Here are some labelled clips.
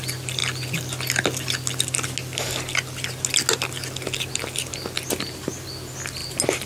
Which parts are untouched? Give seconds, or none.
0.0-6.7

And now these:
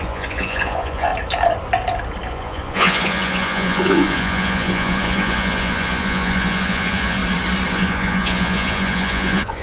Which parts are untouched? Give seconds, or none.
1.1-2.3; 7.2-7.7

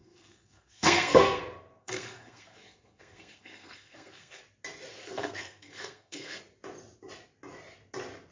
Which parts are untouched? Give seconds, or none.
1.4-1.8; 4.4-4.9; 6.4-8.3

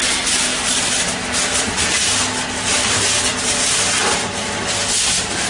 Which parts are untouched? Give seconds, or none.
0.0-0.5; 1.8-3.3; 3.8-5.5

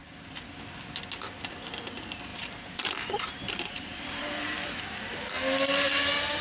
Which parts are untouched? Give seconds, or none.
0.0-2.3; 4.8-6.4

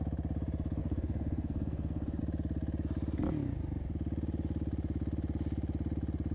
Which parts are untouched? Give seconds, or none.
0.0-0.8; 2.2-6.3

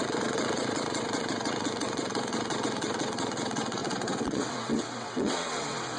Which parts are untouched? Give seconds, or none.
none

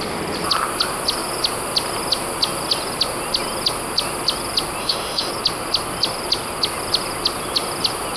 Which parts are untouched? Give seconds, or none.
0.0-4.8; 5.3-8.2